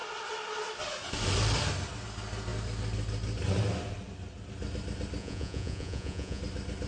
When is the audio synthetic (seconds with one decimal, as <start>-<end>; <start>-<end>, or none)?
5.2-6.4